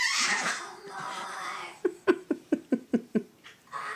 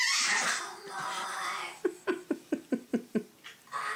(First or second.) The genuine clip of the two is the second